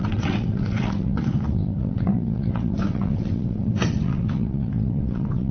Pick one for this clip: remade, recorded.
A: remade